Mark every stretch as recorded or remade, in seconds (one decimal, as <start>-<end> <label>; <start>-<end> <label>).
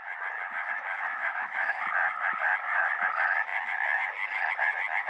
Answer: 0.0-1.2 recorded; 1.2-1.8 remade; 1.8-5.1 recorded